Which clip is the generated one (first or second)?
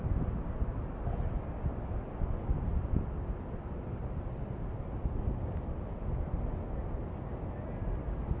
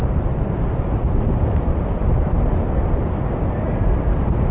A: second